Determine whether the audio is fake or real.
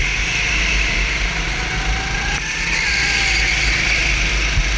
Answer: real